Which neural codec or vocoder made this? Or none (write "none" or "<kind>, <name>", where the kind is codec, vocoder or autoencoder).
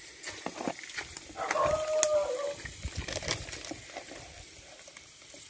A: none